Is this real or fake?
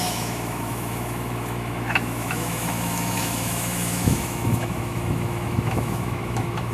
fake